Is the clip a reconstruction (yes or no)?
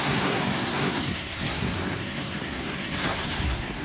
yes